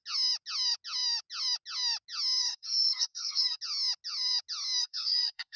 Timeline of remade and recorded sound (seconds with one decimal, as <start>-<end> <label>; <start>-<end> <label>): 0.0-2.5 recorded; 2.5-3.6 remade; 3.6-4.8 recorded; 4.8-5.6 remade